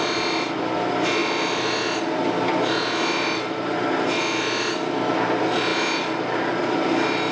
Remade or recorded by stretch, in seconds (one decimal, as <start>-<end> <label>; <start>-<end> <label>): 0.0-7.3 recorded